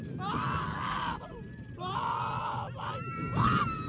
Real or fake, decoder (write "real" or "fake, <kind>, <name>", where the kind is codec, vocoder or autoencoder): real